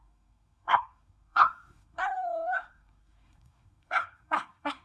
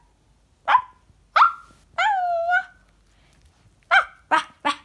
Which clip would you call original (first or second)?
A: second